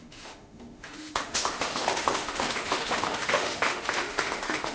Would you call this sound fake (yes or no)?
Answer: yes